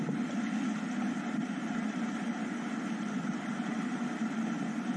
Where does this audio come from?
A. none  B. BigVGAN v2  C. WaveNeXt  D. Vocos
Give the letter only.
A